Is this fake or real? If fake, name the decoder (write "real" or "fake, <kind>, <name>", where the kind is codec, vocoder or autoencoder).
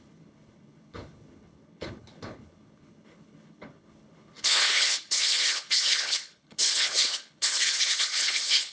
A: fake, codec, HILCodec